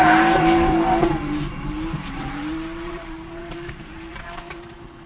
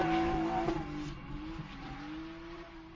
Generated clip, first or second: first